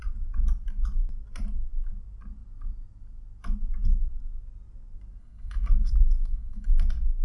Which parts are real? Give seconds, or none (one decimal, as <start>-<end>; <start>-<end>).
0.0-5.2; 6.7-7.2